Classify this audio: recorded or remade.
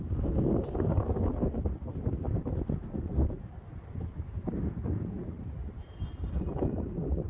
recorded